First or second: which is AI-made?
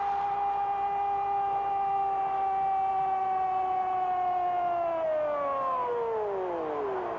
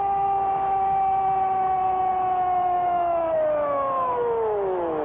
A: second